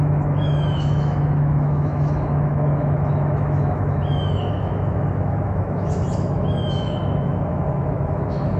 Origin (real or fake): fake